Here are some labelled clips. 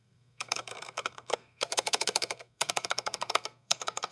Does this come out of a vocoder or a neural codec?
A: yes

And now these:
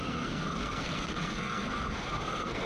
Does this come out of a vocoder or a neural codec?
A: yes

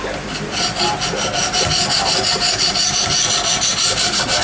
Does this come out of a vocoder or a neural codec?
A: no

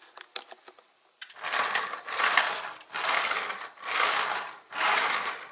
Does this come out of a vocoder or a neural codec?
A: no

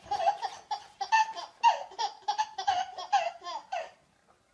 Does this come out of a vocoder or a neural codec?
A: no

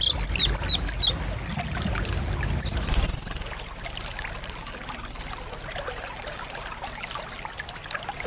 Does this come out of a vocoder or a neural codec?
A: no